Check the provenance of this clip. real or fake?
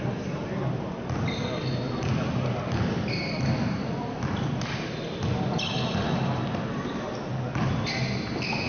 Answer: real